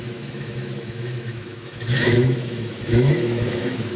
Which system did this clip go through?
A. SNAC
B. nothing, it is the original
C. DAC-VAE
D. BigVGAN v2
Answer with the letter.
C